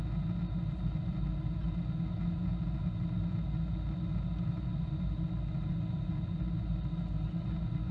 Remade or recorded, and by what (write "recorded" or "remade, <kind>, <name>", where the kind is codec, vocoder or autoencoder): recorded